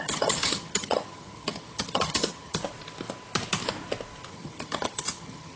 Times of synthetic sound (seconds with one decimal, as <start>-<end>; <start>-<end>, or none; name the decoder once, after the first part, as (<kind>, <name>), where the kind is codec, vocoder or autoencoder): 0.0-2.6 (vocoder, HiFi-GAN); 4.3-5.6